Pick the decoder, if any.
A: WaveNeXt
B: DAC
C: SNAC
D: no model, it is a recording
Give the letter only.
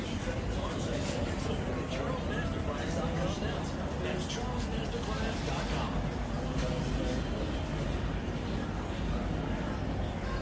D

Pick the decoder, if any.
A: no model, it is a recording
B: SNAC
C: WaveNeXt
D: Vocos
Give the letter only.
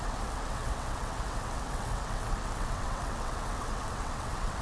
C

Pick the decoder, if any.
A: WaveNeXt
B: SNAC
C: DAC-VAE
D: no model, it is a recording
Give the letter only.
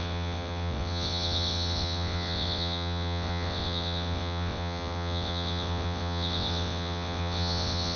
A